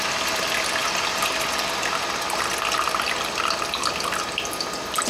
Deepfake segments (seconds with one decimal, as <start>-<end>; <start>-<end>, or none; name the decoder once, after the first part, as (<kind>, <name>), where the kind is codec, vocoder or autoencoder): none